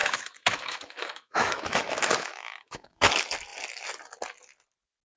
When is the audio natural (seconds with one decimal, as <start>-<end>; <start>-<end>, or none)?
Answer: 3.1-5.2